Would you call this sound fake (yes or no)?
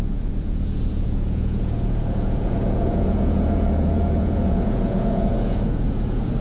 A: yes